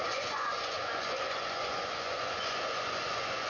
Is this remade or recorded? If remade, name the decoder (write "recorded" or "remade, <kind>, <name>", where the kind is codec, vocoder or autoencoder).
remade, vocoder, Vocos